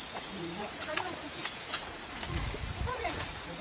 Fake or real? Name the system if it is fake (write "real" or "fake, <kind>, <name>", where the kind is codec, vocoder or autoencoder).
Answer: fake, vocoder, Vocos